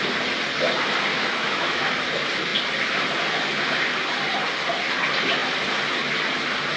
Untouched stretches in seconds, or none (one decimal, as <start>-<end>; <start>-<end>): 0.0-1.1; 2.0-6.8